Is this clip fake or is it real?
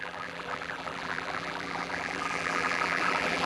fake